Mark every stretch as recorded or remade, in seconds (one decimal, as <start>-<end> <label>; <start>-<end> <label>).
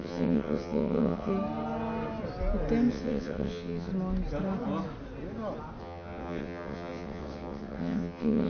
0.0-1.3 remade; 1.3-2.9 recorded; 2.9-3.9 remade; 3.9-5.8 recorded; 5.8-8.5 remade